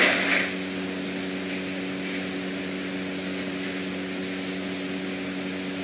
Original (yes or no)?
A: yes